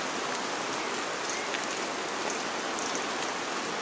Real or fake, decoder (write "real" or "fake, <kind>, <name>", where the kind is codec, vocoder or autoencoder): real